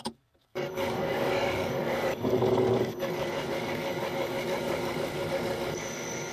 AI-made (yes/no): yes